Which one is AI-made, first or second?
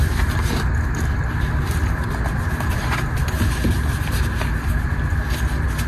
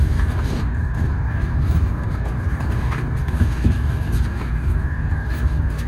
second